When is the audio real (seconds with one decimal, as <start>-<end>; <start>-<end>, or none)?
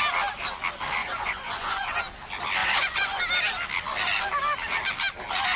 0.0-1.0; 2.0-2.6; 3.2-5.6